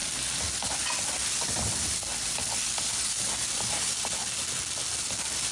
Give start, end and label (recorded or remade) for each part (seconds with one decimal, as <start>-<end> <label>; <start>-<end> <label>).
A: 0.0-5.5 recorded